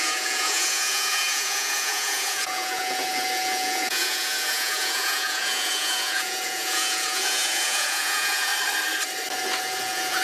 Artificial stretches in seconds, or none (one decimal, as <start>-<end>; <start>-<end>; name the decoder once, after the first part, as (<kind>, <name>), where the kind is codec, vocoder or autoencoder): 0.0-8.5 (vocoder, Vocos); 9.6-10.2